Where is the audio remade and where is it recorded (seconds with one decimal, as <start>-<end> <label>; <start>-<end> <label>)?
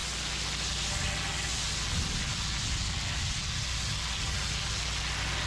0.0-5.5 recorded